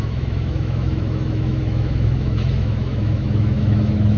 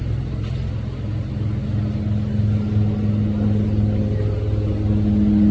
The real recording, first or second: second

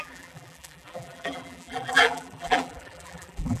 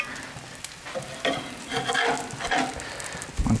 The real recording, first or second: second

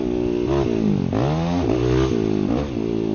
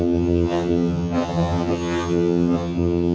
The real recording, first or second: first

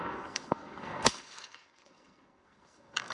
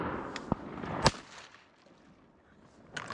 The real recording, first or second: second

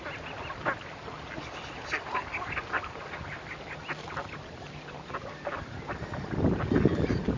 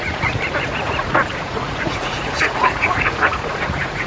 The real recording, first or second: first